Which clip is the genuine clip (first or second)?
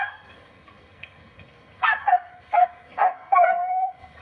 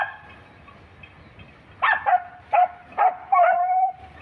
second